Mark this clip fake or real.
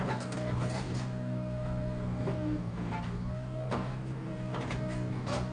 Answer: fake